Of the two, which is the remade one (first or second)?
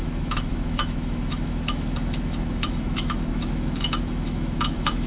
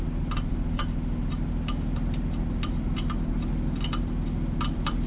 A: first